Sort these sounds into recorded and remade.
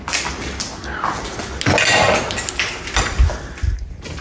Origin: recorded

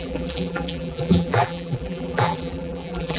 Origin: remade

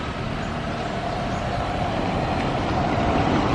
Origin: remade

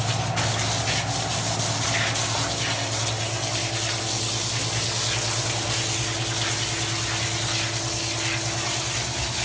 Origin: recorded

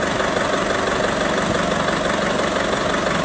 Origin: recorded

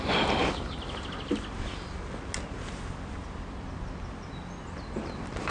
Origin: recorded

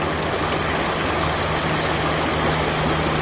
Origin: recorded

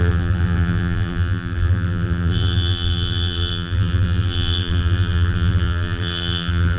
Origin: remade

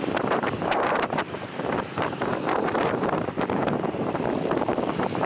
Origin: remade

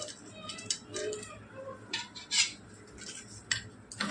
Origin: recorded